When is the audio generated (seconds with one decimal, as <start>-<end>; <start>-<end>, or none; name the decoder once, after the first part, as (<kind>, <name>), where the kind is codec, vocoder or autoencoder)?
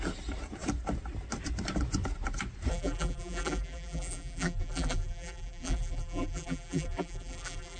2.7-7.8 (vocoder, BigVGAN v2)